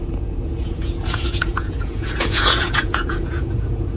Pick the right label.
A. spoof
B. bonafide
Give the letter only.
A